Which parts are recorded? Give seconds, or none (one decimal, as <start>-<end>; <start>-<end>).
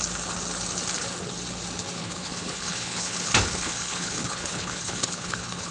0.0-2.0